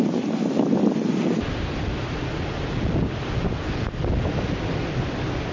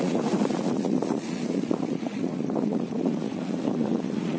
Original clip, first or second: first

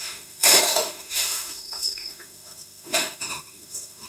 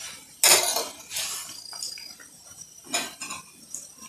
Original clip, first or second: second